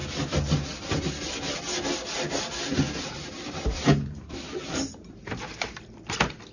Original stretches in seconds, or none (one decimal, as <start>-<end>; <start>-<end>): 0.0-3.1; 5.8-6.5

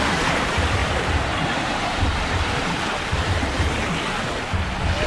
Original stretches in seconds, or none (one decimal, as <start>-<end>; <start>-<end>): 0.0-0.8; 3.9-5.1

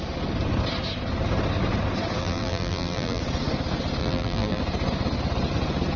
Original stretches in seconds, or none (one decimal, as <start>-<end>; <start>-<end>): 0.0-2.2; 3.2-4.0; 4.6-6.0

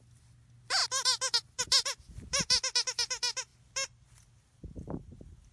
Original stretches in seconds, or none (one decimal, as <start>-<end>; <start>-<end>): 0.0-5.5

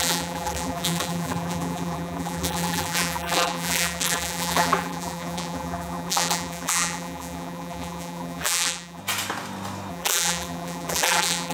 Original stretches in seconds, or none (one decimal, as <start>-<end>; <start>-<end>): 9.0-9.9

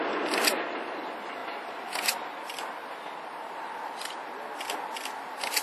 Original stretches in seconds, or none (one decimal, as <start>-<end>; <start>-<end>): 0.0-5.6